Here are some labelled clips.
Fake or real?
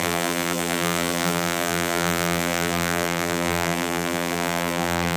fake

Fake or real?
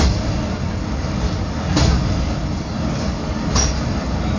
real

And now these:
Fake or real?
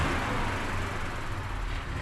real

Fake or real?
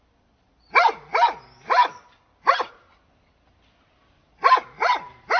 real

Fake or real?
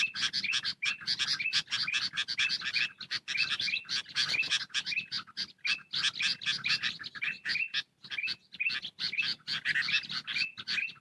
real